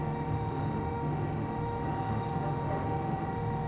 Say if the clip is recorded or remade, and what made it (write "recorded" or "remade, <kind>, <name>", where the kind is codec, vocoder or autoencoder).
remade, autoencoder, DAC-VAE